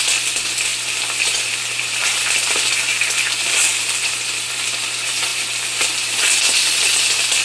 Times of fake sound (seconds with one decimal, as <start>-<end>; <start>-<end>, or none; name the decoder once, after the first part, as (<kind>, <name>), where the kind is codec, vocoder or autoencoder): 0.7-1.5 (vocoder, BigVGAN v2); 2.0-2.7; 3.7-4.5

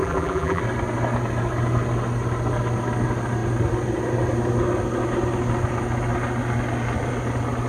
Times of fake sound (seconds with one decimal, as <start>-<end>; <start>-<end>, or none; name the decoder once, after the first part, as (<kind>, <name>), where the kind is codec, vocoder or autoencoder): 0.0-0.6 (vocoder, BigVGAN v2)

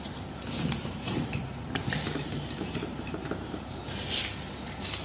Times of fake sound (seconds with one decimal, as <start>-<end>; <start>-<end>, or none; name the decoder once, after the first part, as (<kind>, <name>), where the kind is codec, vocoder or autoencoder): 0.8-3.8 (vocoder, BigVGAN v2)

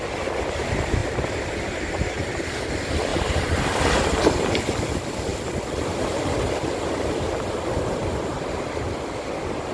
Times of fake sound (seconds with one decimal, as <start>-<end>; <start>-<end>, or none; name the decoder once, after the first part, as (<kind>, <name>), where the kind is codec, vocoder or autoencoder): 1.0-2.3 (vocoder, BigVGAN v2); 3.1-3.8

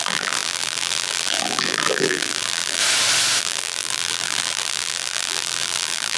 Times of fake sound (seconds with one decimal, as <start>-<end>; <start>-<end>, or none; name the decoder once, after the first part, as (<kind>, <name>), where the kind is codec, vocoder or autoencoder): 0.0-2.8 (vocoder, BigVGAN v2); 3.4-6.2

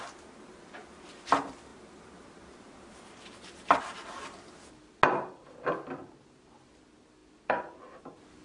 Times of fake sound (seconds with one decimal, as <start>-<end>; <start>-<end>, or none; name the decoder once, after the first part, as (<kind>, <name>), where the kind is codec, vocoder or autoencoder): 7.2-8.0 (vocoder, BigVGAN v2)

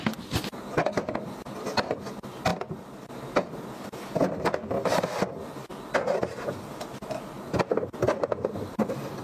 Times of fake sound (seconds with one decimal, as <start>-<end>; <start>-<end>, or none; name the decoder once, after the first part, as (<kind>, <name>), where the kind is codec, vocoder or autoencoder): none

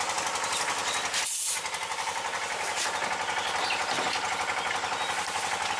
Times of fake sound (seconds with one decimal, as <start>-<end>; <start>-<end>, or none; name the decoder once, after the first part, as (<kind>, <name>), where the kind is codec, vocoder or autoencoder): none